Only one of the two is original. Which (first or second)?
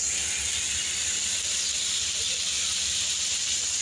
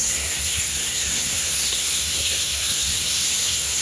first